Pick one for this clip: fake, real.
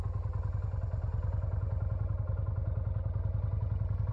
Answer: real